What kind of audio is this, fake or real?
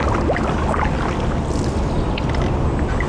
real